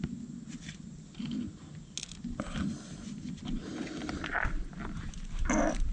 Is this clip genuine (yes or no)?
yes